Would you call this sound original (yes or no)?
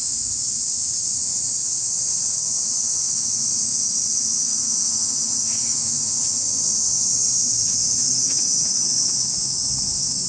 no